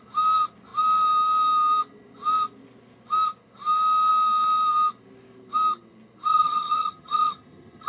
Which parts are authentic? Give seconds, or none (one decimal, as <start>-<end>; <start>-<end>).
0.0-6.3